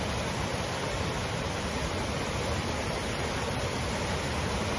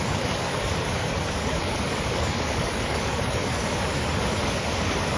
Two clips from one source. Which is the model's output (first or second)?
second